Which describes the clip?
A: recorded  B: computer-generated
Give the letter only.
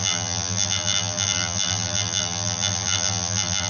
B